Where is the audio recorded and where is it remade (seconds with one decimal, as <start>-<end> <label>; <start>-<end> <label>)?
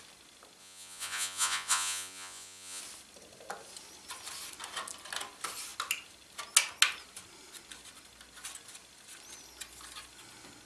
0.0-0.6 recorded; 0.6-2.8 remade; 2.8-10.7 recorded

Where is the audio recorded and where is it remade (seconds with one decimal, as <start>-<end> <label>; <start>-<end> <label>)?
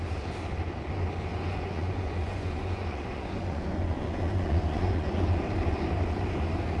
0.0-1.3 recorded; 1.3-5.4 remade; 5.4-6.8 recorded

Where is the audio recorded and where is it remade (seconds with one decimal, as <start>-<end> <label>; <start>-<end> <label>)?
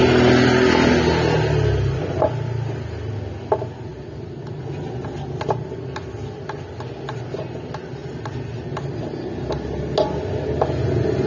0.0-11.3 recorded